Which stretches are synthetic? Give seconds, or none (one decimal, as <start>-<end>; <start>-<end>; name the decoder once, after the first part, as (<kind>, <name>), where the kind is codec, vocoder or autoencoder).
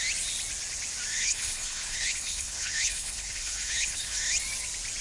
1.2-4.2 (codec, HILCodec)